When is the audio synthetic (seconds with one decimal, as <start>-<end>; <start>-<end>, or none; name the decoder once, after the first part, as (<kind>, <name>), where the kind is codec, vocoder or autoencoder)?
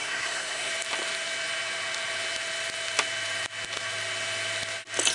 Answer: 0.0-0.7 (codec, SNAC)